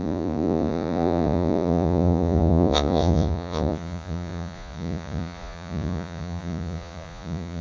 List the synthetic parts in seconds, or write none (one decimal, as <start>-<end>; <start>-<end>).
0.0-7.6